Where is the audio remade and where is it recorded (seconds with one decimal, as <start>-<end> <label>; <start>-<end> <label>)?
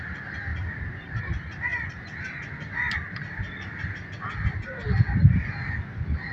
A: 0.0-0.5 recorded; 0.5-1.2 remade; 1.2-6.3 recorded